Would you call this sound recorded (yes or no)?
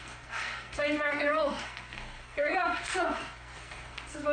no